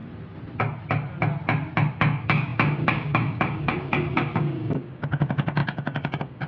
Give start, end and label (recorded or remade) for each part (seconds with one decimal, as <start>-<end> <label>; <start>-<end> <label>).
0.0-1.9 recorded; 1.9-6.5 remade

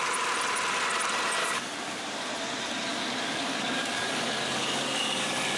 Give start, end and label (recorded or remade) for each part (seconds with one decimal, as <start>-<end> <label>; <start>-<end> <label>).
0.0-1.4 recorded; 1.4-2.3 remade; 2.3-2.9 recorded; 2.9-5.6 remade